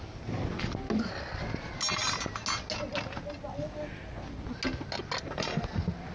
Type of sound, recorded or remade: recorded